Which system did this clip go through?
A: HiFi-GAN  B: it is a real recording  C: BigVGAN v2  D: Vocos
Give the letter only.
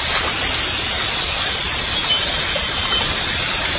B